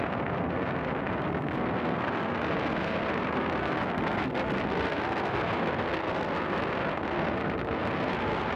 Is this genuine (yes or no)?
no